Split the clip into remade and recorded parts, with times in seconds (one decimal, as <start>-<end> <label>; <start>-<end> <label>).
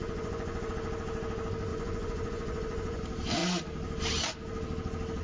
0.0-0.7 remade; 0.7-1.7 recorded; 1.7-3.0 remade; 3.0-5.2 recorded